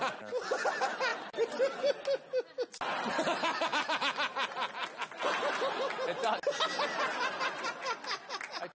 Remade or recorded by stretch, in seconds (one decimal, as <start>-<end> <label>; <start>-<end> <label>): 0.0-1.1 recorded; 1.1-1.9 remade; 1.9-8.7 recorded